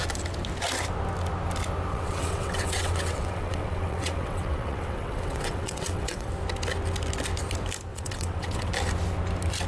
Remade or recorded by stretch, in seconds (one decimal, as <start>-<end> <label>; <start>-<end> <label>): 0.0-1.9 recorded; 1.9-6.3 remade; 6.3-7.9 recorded; 7.9-8.7 remade; 8.7-9.7 recorded